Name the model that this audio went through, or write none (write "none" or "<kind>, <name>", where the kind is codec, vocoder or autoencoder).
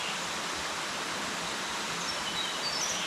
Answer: none